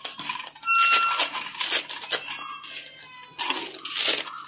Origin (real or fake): real